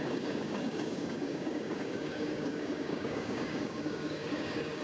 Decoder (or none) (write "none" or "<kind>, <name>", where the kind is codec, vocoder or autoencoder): codec, DAC